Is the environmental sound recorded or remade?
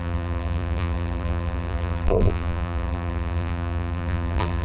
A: remade